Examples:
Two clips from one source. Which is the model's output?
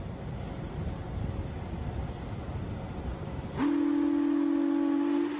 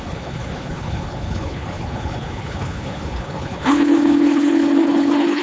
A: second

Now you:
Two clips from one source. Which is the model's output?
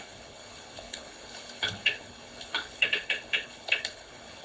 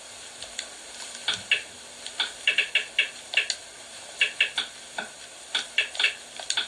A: first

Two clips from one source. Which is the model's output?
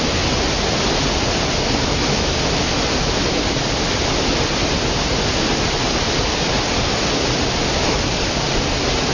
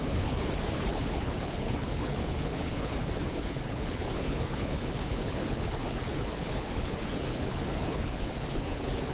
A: second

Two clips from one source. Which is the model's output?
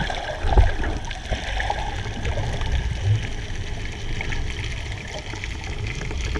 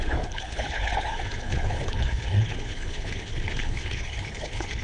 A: second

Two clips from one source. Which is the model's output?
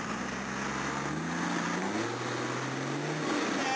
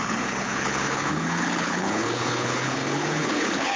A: second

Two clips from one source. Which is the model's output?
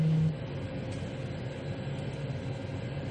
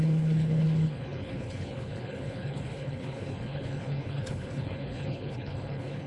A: second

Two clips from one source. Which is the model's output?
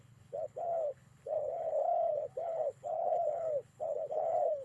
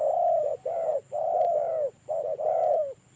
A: first